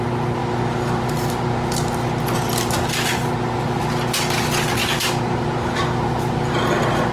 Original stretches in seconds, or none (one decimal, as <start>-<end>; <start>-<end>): 0.0-4.8; 6.5-7.1